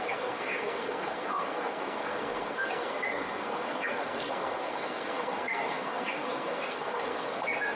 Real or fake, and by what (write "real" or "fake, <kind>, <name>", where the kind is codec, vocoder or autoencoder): fake, codec, SNAC